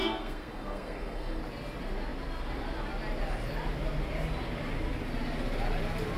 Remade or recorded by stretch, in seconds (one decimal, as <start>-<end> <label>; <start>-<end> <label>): 0.0-1.4 remade; 1.4-6.2 recorded